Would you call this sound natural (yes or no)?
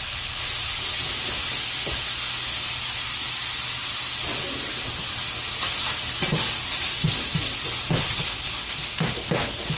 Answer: yes